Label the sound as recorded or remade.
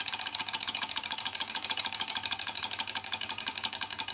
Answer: remade